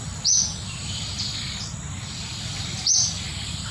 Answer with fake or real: real